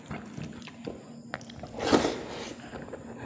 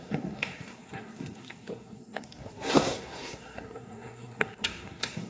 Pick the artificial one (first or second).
second